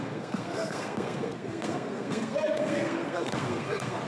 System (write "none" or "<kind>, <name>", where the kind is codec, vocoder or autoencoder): codec, SNAC